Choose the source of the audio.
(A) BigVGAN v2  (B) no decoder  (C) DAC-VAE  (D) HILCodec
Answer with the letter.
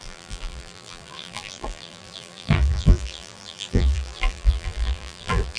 A